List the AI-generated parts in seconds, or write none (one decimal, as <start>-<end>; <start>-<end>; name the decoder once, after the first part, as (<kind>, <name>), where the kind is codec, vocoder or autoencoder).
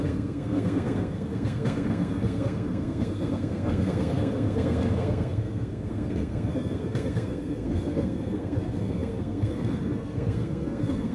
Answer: 0.0-11.1 (codec, SNAC)